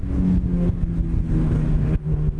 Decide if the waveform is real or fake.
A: fake